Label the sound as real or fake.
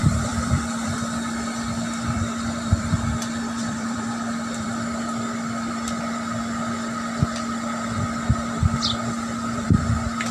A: fake